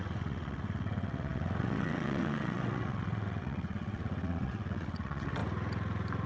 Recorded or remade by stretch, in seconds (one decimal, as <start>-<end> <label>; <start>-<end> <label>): 0.0-5.4 remade; 5.4-6.3 recorded